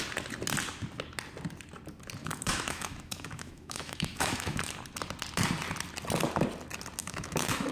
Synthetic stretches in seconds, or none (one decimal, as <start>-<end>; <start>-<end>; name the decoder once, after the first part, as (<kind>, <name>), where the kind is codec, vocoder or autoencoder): 2.2-4.7 (autoencoder, DAC-VAE); 7.0-7.7